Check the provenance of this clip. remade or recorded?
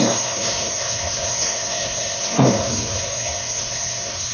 remade